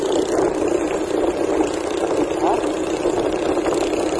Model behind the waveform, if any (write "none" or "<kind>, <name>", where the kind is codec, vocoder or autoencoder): none